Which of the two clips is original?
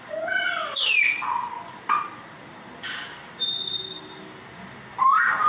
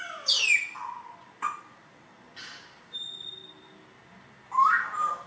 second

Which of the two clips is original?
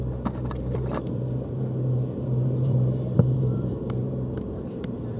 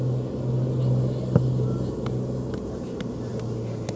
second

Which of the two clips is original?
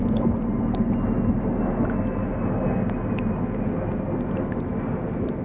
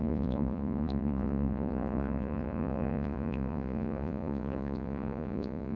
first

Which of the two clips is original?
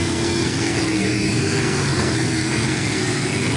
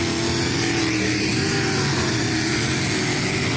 second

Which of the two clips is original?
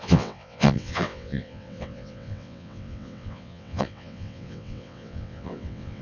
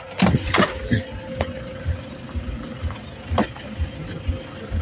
second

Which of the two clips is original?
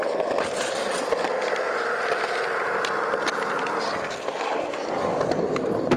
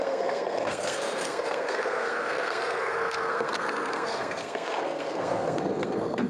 first